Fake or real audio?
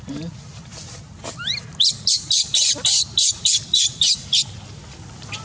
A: real